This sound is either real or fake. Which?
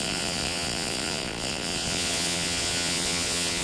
fake